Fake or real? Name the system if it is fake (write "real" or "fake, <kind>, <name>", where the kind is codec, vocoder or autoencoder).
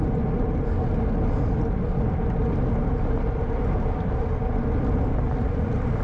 real